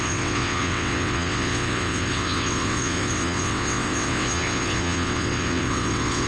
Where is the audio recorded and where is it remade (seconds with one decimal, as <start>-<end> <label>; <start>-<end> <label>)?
0.0-6.3 remade